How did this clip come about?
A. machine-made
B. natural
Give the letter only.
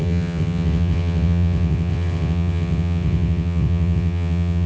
A